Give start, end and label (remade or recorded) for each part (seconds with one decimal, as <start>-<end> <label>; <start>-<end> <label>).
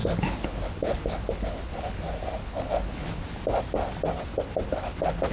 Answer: 0.0-2.0 remade; 2.0-2.4 recorded; 2.4-3.2 remade; 3.2-4.3 recorded; 4.3-5.3 remade